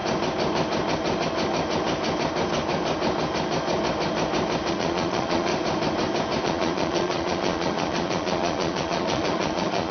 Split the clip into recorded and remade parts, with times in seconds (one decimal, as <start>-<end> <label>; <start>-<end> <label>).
0.0-4.7 recorded; 4.7-5.5 remade; 5.5-6.4 recorded; 6.4-9.9 remade